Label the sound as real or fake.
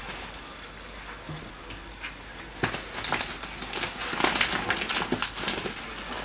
real